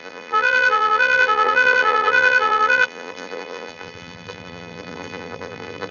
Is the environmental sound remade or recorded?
remade